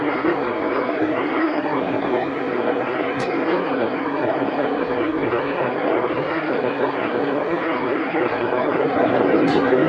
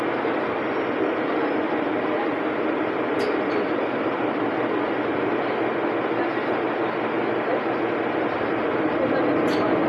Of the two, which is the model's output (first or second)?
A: first